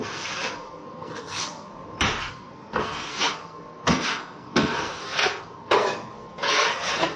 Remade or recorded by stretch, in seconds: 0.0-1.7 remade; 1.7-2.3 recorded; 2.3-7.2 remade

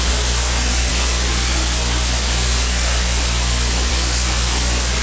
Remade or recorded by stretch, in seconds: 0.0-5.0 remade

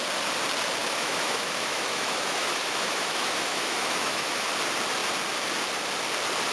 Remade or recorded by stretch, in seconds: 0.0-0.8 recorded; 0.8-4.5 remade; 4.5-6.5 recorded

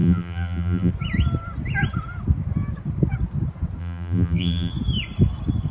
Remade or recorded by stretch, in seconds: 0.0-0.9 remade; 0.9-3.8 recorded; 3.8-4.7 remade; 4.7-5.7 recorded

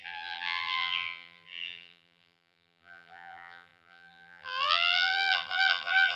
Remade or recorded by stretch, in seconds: 0.0-6.2 remade